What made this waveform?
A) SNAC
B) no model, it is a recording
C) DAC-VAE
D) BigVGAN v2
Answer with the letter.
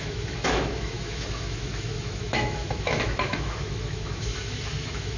C